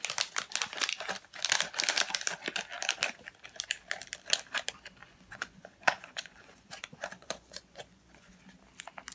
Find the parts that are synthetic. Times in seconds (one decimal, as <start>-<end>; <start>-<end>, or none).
5.0-8.4